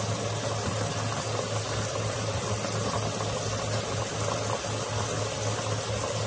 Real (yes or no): yes